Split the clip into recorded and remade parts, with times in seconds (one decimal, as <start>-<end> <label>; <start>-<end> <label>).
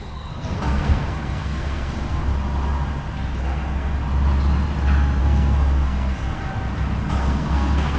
0.0-2.3 remade; 2.3-3.4 recorded; 3.4-3.9 remade; 3.9-5.2 recorded; 5.2-6.5 remade; 6.5-7.1 recorded; 7.1-8.0 remade